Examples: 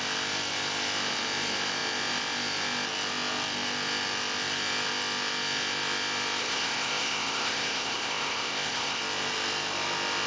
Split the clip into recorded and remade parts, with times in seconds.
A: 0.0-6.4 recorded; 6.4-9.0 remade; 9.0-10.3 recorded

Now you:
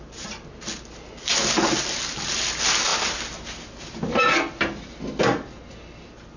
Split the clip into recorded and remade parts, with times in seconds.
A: 0.0-6.4 recorded

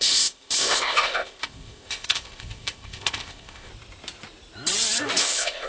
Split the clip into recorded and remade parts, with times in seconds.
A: 0.0-3.7 remade; 3.7-5.2 recorded; 5.2-5.7 remade

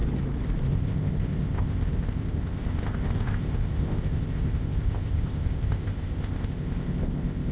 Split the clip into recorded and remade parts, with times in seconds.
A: 0.0-0.7 recorded; 0.7-7.5 remade

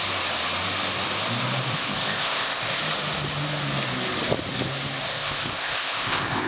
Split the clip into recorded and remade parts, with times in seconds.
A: 0.0-1.7 recorded; 1.7-2.8 remade; 2.8-5.0 recorded; 5.0-6.5 remade

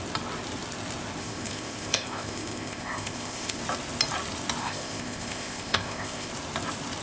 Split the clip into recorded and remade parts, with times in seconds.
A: 0.0-1.2 recorded; 1.2-3.6 remade; 3.6-4.6 recorded; 4.6-6.3 remade; 6.3-7.0 recorded

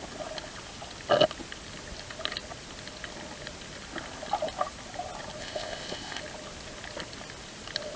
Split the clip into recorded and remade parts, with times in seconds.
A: 0.0-5.4 recorded; 5.4-6.2 remade; 6.2-8.0 recorded